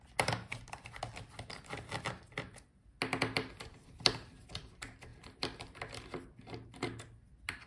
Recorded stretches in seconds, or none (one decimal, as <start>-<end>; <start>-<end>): 0.0-7.7